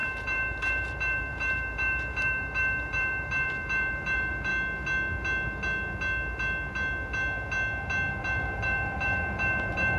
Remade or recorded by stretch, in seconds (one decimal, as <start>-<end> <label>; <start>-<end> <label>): 0.0-4.5 remade; 4.5-8.1 recorded; 8.1-10.0 remade